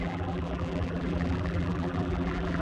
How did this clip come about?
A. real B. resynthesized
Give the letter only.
B